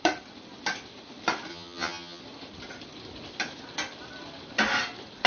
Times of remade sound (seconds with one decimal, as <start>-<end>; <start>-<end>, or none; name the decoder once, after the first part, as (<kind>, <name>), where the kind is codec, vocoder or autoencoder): 1.5-2.2 (vocoder, HiFi-GAN)